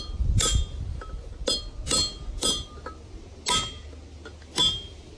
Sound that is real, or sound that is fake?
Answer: real